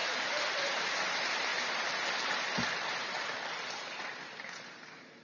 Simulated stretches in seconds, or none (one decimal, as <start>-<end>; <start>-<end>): 0.6-1.5; 2.3-5.2